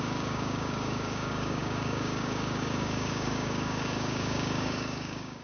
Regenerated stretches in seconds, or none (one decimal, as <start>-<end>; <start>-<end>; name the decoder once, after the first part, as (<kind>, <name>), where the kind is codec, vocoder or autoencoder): 0.0-5.4 (codec, DAC)